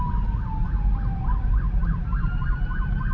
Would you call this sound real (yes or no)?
yes